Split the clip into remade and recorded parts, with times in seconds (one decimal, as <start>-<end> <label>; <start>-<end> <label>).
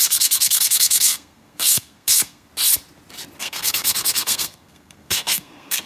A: 0.0-2.5 remade; 2.5-3.4 recorded; 3.4-5.9 remade